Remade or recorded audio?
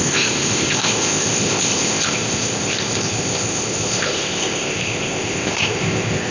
remade